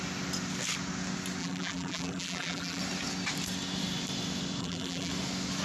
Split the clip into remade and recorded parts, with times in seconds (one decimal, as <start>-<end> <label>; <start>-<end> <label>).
0.0-1.4 recorded; 1.4-2.8 remade; 2.8-4.6 recorded; 4.6-5.1 remade; 5.1-5.6 recorded